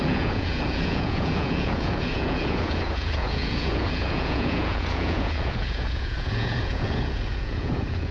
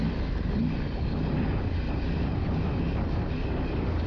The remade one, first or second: first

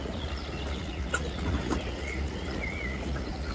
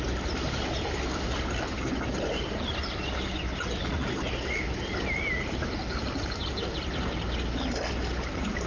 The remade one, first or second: first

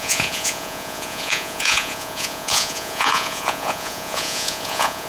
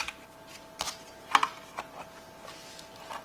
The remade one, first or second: first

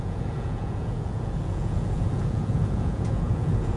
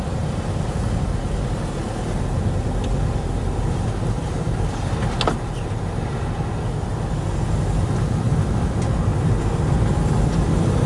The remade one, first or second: first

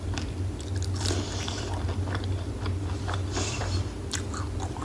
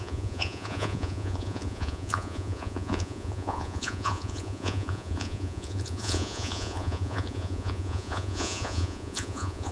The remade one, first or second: second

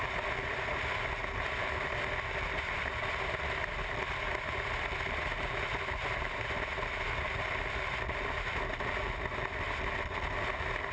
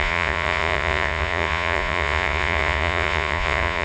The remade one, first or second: second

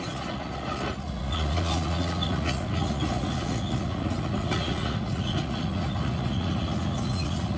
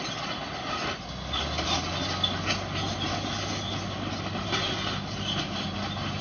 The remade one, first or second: first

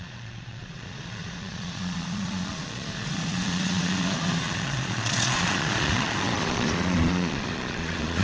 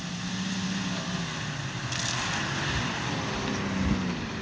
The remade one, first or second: first